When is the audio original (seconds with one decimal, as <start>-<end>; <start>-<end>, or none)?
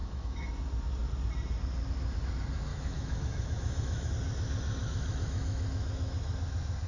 0.5-2.7; 4.1-4.8; 6.4-6.9